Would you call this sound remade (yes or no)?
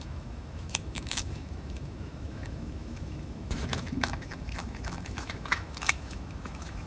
yes